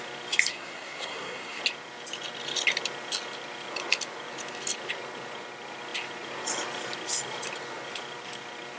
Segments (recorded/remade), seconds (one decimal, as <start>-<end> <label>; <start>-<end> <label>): 0.0-0.5 recorded; 0.5-1.6 remade; 1.6-8.8 recorded